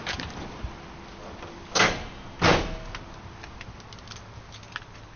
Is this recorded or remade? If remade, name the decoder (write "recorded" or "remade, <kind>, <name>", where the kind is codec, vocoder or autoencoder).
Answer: recorded